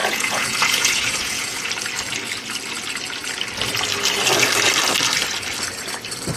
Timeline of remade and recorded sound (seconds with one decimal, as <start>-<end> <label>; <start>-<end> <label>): 0.0-1.7 remade; 1.7-6.4 recorded